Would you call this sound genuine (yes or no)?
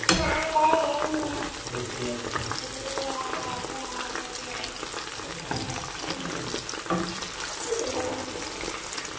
yes